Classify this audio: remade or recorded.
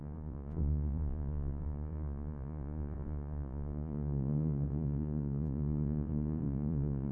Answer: remade